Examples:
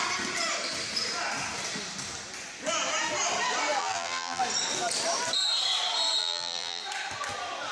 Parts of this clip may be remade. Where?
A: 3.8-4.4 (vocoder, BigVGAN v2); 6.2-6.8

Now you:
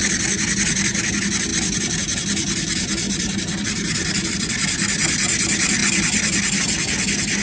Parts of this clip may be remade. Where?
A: 1.5-4.3 (vocoder, BigVGAN v2); 5.8-6.6

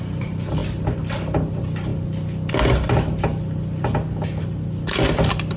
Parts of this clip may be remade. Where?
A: none